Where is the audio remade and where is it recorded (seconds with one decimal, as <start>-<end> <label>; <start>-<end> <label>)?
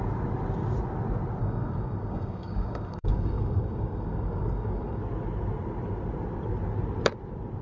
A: 0.0-1.4 recorded; 1.4-5.0 remade; 5.0-7.6 recorded